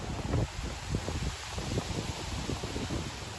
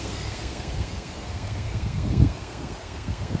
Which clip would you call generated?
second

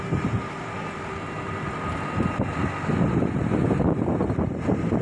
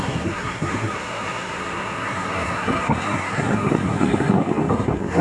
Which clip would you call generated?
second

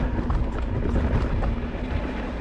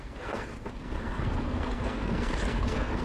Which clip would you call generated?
second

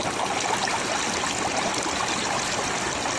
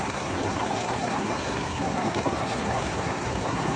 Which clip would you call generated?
second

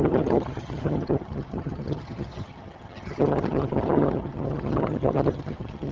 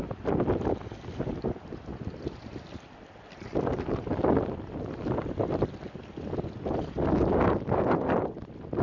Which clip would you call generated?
first